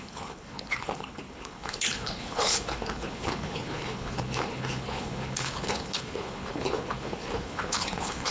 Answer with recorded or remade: remade